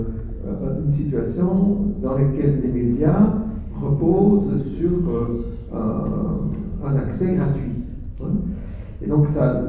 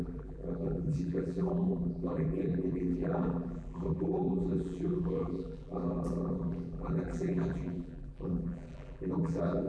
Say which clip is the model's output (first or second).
second